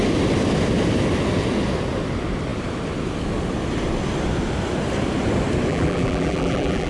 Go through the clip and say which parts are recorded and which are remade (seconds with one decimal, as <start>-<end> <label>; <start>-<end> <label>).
0.0-5.7 recorded; 5.7-6.9 remade